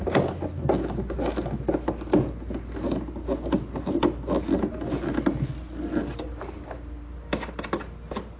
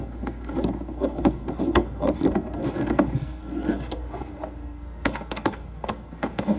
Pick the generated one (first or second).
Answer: second